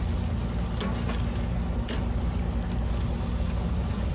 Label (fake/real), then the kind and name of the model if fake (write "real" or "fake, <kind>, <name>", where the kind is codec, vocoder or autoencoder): real